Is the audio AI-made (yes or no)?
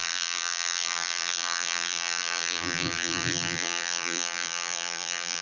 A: yes